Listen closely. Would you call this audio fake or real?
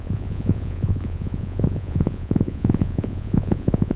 fake